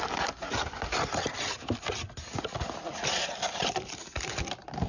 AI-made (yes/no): no